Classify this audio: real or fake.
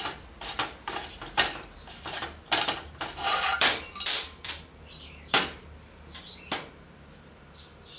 fake